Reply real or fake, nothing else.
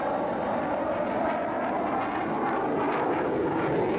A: real